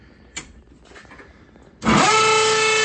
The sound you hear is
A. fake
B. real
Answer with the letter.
B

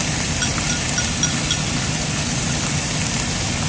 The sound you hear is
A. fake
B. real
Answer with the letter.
B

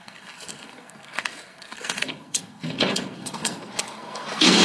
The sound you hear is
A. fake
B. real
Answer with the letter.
A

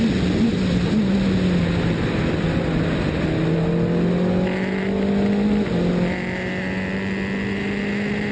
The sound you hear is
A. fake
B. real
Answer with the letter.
B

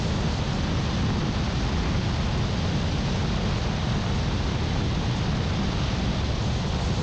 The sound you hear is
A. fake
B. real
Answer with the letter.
B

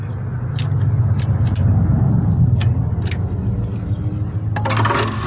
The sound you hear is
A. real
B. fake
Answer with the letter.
A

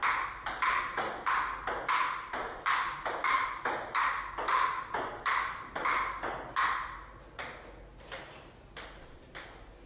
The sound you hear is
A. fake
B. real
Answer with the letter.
B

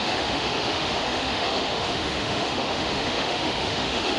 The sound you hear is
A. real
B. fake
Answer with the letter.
B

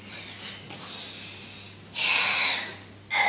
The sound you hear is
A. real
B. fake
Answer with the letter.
A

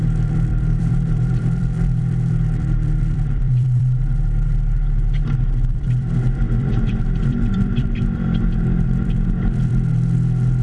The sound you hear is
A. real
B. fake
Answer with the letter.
B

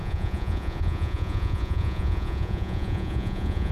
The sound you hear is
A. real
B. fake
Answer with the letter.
B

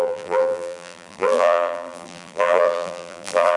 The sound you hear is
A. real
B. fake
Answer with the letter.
B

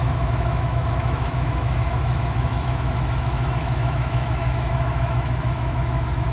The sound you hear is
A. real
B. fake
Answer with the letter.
B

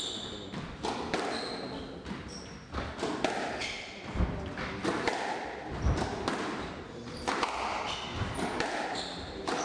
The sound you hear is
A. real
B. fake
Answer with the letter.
A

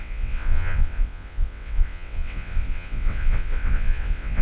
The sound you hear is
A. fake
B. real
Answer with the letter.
A